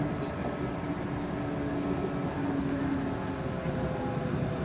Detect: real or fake real